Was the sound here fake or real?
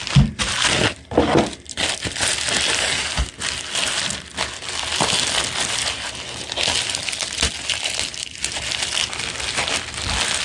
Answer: real